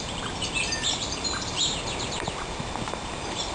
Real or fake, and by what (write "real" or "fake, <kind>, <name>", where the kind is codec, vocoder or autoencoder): fake, vocoder, BigVGAN v2